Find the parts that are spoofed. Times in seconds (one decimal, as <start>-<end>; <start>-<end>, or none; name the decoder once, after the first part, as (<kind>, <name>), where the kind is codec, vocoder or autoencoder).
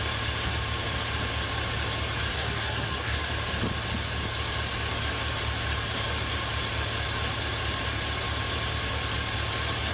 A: 2.3-3.3 (codec, SNAC)